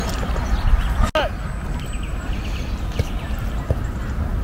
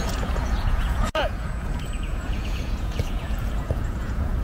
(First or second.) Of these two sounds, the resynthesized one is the second